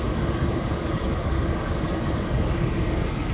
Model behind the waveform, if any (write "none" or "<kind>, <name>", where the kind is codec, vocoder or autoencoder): codec, DAC